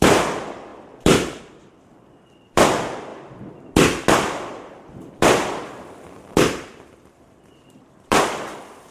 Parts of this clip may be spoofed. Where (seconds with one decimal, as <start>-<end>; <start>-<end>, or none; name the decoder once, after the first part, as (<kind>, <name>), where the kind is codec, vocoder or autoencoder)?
0.0-3.1 (vocoder, BigVGAN v2); 4.9-8.9